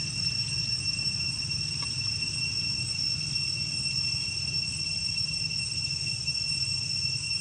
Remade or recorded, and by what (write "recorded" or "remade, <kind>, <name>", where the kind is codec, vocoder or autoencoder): recorded